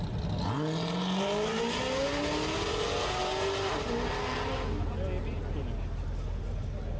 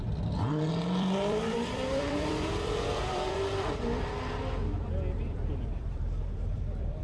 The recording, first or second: first